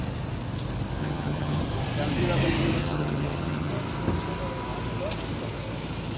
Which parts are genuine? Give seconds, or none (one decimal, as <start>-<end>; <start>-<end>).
0.0-1.0; 1.6-2.8; 3.7-6.2